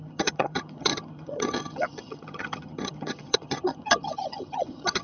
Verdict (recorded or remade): remade